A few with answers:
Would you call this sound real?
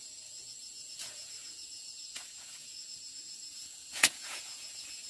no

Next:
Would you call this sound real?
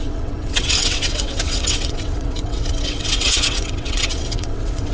no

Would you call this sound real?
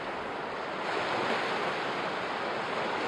yes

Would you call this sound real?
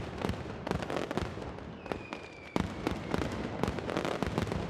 yes